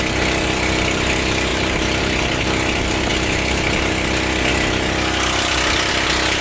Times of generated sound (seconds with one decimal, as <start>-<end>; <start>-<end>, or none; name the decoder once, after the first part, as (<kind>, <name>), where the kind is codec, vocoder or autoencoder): none